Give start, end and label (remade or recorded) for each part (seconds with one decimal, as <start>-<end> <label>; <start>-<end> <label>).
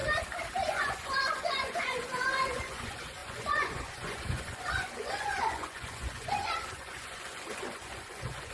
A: 0.0-0.7 recorded; 0.7-8.5 remade